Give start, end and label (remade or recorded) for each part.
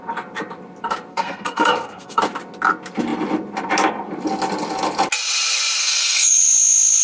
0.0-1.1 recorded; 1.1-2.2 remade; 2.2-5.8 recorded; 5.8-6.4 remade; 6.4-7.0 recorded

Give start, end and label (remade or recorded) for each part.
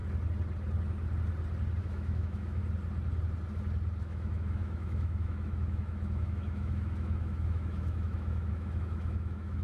0.0-1.8 recorded; 1.8-2.6 remade; 2.6-4.0 recorded; 4.0-9.6 remade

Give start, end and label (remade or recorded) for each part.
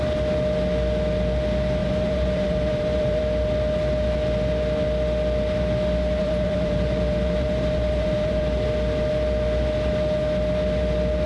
0.0-1.8 recorded; 1.8-3.2 remade; 3.2-6.2 recorded; 6.2-8.4 remade; 8.4-11.3 recorded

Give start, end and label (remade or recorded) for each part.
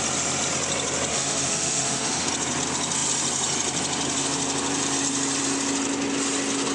0.0-1.1 recorded; 1.1-2.3 remade; 2.3-6.7 recorded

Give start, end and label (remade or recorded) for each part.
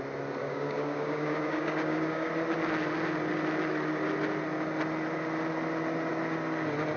0.0-0.4 recorded; 0.4-2.3 remade; 2.3-7.0 recorded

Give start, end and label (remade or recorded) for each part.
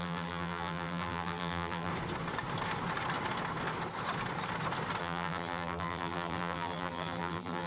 0.0-1.9 remade; 1.9-5.0 recorded; 5.0-7.7 remade